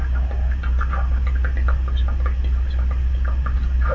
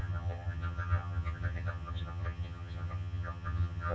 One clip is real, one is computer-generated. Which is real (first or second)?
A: first